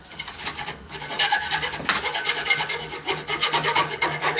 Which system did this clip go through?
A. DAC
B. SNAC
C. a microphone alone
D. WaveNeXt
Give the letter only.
A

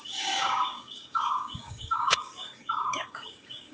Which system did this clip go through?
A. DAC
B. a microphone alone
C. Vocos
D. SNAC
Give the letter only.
A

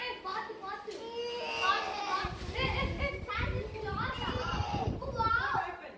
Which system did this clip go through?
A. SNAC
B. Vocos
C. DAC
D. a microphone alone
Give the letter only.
D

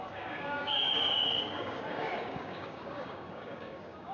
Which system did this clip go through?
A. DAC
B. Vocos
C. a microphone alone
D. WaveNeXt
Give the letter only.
A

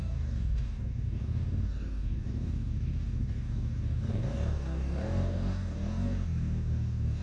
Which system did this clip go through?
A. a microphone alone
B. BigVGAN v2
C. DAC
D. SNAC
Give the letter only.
C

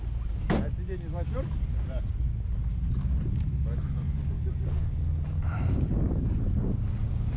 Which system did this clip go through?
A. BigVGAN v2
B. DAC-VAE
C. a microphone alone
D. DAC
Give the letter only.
C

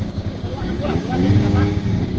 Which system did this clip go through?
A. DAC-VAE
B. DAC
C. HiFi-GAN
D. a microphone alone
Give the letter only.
B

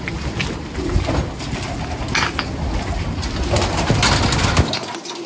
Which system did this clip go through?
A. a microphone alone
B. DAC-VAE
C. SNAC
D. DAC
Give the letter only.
A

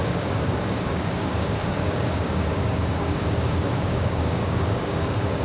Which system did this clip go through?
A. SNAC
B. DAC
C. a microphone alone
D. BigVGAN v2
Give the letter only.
B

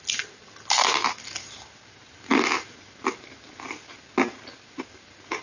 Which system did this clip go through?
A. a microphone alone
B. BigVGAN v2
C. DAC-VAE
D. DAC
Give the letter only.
A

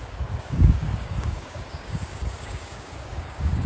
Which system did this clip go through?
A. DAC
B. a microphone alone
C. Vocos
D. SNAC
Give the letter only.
A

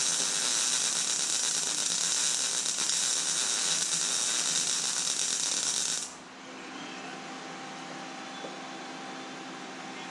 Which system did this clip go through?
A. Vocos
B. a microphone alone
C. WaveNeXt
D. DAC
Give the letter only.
B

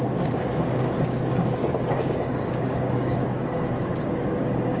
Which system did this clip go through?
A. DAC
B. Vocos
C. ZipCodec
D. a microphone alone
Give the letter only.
A